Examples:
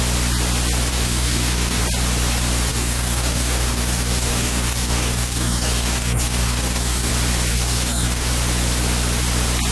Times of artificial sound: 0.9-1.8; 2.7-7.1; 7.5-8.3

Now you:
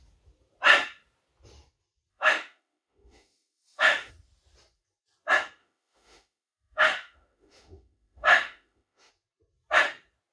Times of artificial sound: 2.1-4.1; 5.6-9.1

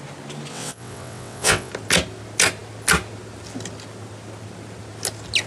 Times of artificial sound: 0.5-1.7

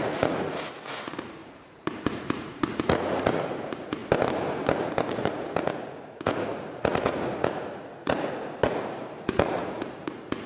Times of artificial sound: 0.0-4.0; 5.1-10.5